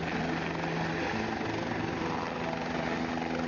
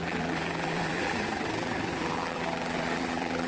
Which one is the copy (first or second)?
second